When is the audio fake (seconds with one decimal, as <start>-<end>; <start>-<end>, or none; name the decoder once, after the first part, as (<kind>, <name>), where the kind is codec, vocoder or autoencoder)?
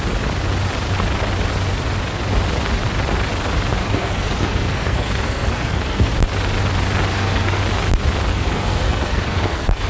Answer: 3.8-6.1 (codec, SNAC); 7.1-7.6; 8.3-9.9